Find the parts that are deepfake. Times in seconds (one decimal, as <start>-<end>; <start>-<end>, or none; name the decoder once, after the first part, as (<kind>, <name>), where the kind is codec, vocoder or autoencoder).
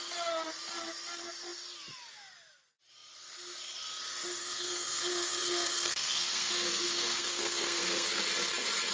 4.4-8.2 (codec, SNAC)